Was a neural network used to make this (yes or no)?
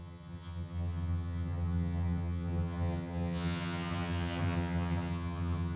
yes